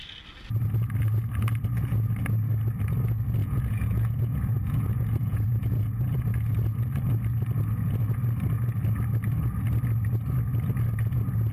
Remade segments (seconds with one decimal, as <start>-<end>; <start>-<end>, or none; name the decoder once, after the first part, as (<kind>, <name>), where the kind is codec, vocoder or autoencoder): 3.4-6.2 (vocoder, Vocos)